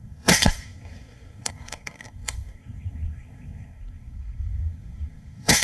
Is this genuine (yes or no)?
no